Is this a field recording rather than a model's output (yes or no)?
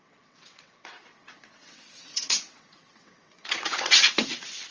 no